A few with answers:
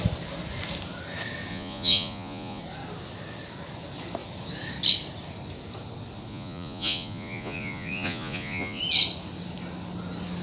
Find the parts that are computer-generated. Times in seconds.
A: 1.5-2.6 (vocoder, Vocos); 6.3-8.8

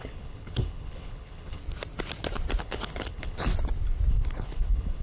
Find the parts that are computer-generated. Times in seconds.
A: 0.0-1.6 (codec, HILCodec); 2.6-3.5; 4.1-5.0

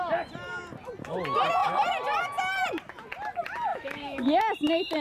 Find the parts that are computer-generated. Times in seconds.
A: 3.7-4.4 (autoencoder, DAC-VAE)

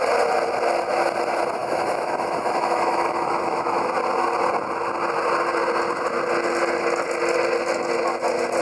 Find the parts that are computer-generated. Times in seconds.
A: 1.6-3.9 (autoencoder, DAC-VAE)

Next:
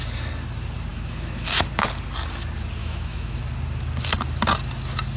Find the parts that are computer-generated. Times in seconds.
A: 0.9-1.7 (autoencoder, DAC-VAE); 2.8-3.4

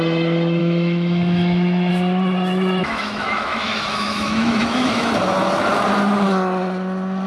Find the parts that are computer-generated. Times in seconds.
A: 0.6-1.9 (autoencoder, DAC-VAE); 2.8-5.1

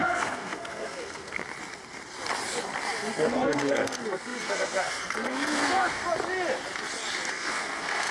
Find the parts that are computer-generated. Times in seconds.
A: 0.0-1.4 (codec, SNAC); 3.1-6.0; 7.3-8.1

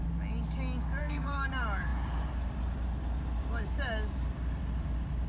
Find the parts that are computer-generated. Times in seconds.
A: 1.0-1.5 (codec, SNAC)